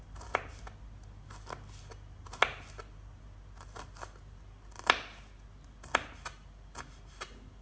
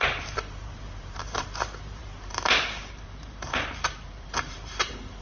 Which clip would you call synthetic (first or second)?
second